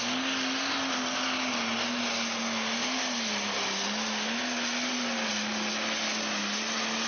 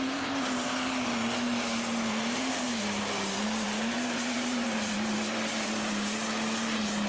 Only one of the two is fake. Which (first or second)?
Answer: second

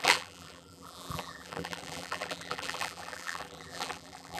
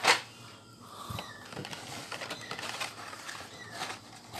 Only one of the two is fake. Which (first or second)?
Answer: first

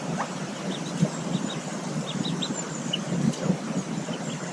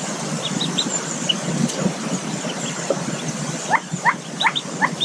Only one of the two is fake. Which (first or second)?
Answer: second